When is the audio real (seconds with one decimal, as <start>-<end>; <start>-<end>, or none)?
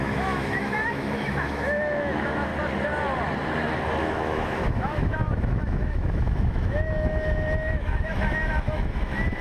2.5-4.0